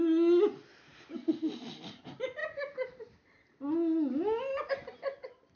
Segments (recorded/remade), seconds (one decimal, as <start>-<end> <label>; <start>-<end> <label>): 0.0-5.6 recorded